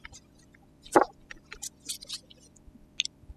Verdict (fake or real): real